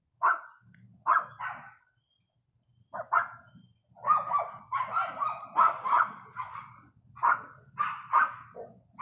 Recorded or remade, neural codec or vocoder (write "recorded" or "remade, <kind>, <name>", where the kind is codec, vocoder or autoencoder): recorded